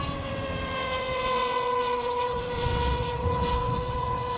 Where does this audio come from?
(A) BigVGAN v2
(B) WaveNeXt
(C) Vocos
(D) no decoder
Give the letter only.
B